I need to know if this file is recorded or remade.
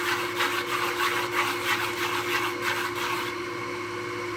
recorded